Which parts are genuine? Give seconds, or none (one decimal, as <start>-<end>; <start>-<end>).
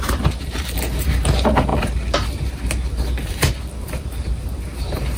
none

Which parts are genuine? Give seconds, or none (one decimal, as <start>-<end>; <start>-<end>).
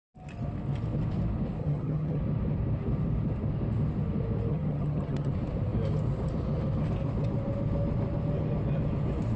0.0-1.6; 2.2-4.5; 5.3-9.4